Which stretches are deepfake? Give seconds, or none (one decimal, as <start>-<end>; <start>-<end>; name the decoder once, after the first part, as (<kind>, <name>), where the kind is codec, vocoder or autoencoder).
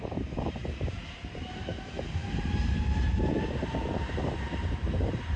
0.0-5.4 (vocoder, BigVGAN v2)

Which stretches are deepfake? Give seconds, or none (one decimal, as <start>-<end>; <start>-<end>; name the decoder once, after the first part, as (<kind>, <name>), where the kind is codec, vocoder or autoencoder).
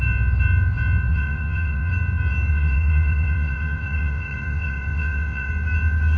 1.1-1.9 (vocoder, WaveNeXt); 2.5-5.5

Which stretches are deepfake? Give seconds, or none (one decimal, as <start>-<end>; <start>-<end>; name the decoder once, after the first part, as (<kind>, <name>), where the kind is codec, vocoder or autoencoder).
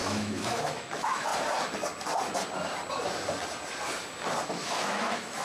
0.0-1.3 (autoencoder, DAC-VAE); 4.5-5.4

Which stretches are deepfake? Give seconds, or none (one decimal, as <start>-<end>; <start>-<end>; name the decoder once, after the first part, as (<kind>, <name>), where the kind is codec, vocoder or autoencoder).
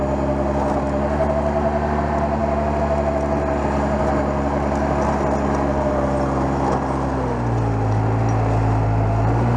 none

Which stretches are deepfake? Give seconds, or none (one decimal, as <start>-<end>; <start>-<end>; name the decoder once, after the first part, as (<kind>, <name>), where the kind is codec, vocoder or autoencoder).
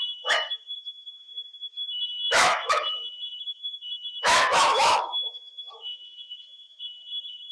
0.0-1.3 (autoencoder, DAC-VAE); 1.9-7.5